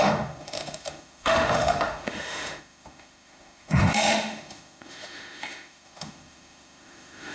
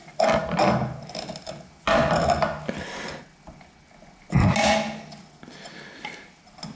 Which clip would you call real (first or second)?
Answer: second